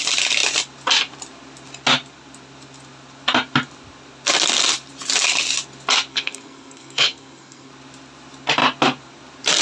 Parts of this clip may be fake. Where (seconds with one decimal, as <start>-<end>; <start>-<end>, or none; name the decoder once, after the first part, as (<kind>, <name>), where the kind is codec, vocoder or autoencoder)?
6.1-7.7 (codec, SNAC)